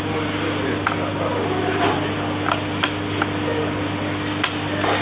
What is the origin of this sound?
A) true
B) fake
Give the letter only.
A